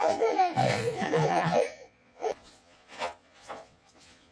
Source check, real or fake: fake